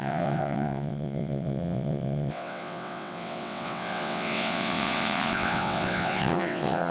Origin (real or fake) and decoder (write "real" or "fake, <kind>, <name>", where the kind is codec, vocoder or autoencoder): fake, vocoder, WaveNeXt